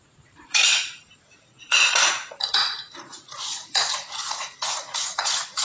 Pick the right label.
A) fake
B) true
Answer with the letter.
A